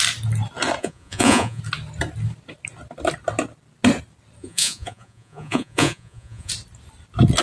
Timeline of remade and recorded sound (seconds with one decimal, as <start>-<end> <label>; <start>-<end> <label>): 0.0-0.8 recorded; 0.8-1.6 remade; 1.6-4.4 recorded; 4.4-6.5 remade; 6.5-7.4 recorded